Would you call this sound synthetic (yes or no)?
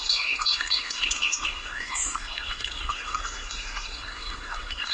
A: yes